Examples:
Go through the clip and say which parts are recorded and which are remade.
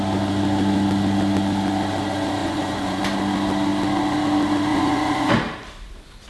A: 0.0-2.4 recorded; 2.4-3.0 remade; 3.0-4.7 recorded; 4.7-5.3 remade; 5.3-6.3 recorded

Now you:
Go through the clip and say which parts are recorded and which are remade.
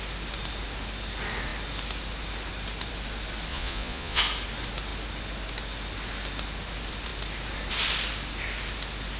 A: 0.0-3.5 recorded; 3.5-4.2 remade; 4.2-9.2 recorded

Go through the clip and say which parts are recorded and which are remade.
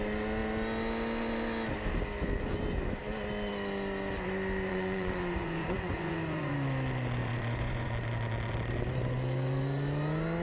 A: 0.0-4.7 recorded; 4.7-6.5 remade; 6.5-7.2 recorded; 7.2-7.9 remade; 7.9-10.4 recorded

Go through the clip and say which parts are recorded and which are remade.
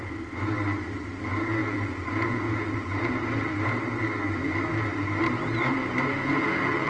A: 0.0-1.6 recorded; 1.6-3.2 remade; 3.2-6.1 recorded; 6.1-6.9 remade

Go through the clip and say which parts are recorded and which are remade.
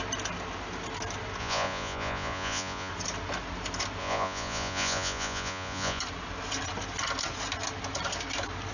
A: 0.0-1.4 recorded; 1.4-2.9 remade; 2.9-4.0 recorded; 4.0-6.0 remade; 6.0-8.7 recorded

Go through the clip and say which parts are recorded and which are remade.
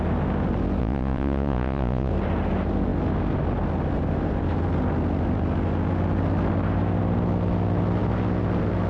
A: 0.0-0.8 recorded; 0.8-2.1 remade; 2.1-8.9 recorded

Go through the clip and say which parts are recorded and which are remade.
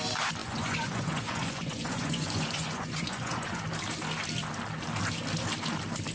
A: 0.0-0.4 recorded; 0.4-3.6 remade; 3.6-6.1 recorded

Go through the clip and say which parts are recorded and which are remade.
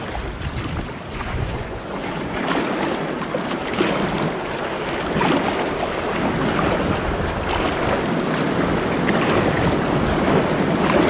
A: 0.0-1.1 recorded; 1.1-2.4 remade; 2.4-11.1 recorded